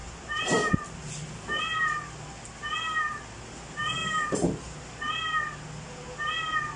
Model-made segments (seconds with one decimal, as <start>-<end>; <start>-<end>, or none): 0.0-2.3; 4.0-4.8